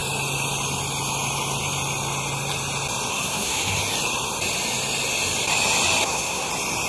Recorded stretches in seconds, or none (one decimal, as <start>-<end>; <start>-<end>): 0.0-3.1; 3.8-6.0; 6.5-6.9